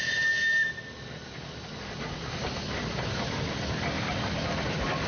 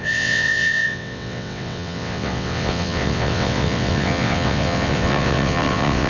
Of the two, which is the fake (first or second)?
second